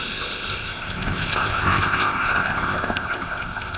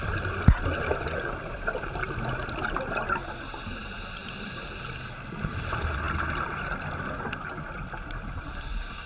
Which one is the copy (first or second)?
first